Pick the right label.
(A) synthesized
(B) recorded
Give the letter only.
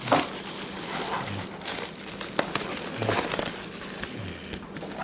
B